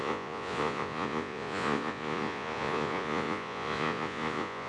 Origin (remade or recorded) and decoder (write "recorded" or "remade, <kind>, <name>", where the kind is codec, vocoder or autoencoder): remade, vocoder, Vocos